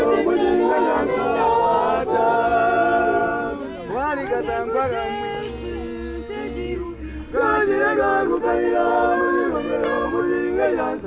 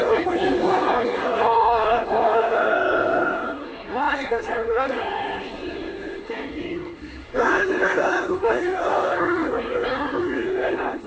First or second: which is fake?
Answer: second